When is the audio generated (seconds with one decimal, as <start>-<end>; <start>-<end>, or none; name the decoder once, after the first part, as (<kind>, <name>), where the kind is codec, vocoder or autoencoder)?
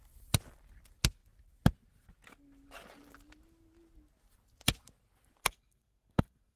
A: 5.4-6.6 (codec, SNAC)